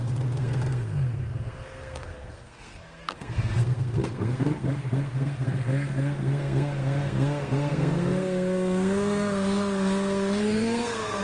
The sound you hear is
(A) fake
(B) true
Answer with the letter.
A